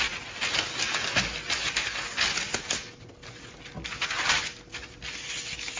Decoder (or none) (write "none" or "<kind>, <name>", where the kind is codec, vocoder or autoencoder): none